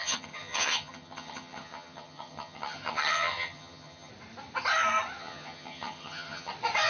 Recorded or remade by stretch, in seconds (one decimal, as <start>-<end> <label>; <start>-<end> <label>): 0.0-4.1 remade; 4.1-5.2 recorded; 5.2-6.5 remade; 6.5-6.9 recorded